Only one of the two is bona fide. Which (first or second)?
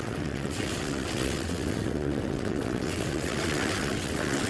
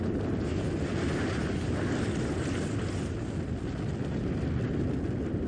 second